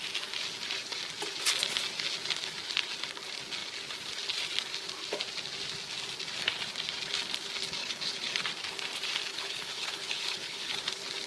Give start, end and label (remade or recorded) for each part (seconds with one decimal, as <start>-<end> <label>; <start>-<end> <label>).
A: 0.0-7.8 recorded; 7.8-8.4 remade; 8.4-9.3 recorded; 9.3-10.8 remade; 10.8-11.3 recorded